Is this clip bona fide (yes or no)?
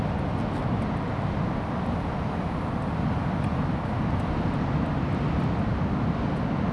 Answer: yes